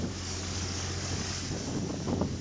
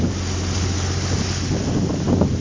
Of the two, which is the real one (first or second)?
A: second